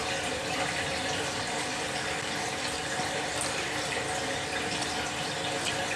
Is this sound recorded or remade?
recorded